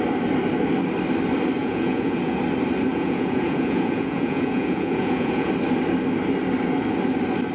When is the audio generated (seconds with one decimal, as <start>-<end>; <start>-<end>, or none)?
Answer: 1.6-2.4; 2.9-5.5